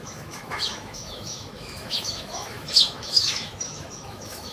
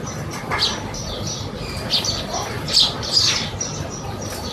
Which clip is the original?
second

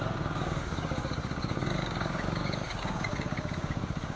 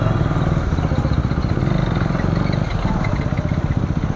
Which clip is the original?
second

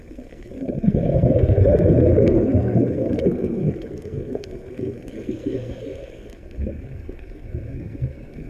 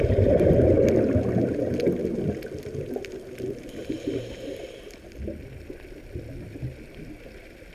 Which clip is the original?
second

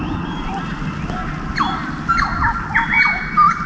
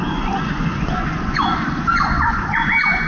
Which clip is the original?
first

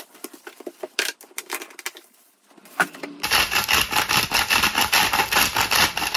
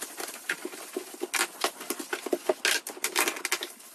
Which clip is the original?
second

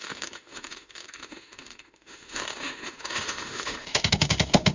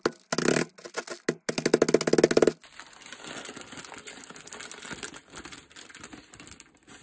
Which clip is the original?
second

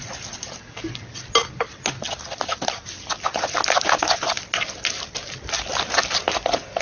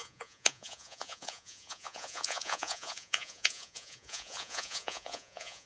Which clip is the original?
first